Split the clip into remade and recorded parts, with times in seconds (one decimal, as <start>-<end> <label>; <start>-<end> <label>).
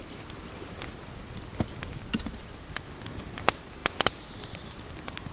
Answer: 0.0-5.3 recorded